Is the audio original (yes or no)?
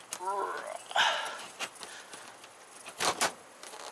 yes